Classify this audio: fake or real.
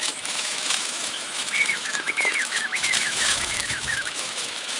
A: fake